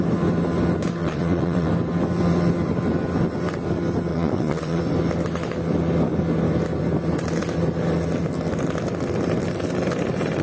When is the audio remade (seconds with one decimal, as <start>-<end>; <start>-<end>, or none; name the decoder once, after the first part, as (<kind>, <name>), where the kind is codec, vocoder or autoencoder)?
1.0-1.7 (vocoder, WaveNeXt); 4.1-4.8